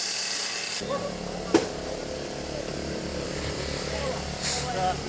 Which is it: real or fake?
real